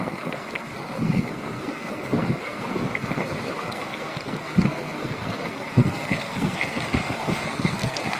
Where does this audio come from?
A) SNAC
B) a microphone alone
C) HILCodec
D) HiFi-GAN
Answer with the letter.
A